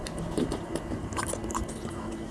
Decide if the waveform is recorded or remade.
recorded